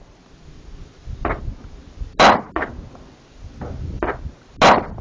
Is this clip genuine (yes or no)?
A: yes